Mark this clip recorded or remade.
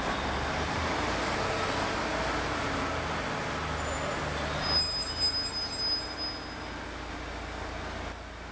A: recorded